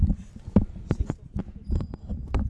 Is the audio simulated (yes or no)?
no